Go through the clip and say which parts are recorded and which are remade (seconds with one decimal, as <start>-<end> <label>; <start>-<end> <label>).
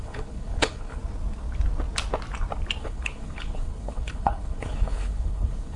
0.0-1.0 remade; 1.0-2.8 recorded; 2.8-5.8 remade